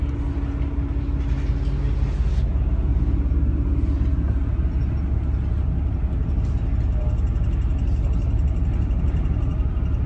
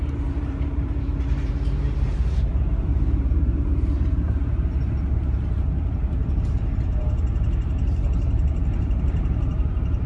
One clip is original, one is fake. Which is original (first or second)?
first